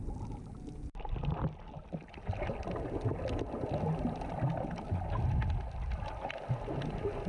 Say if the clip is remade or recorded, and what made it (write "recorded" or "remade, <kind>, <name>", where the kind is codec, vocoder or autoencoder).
recorded